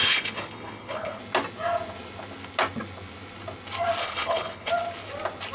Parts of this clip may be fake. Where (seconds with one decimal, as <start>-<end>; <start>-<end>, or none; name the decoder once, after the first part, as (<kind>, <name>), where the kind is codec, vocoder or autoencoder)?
0.0-1.2 (codec, HILCodec); 4.0-4.7